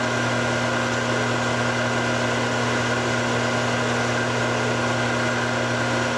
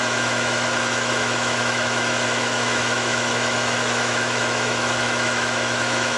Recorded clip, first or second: first